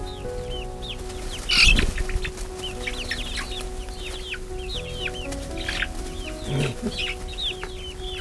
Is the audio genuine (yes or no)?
yes